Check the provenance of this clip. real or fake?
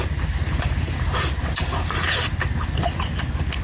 real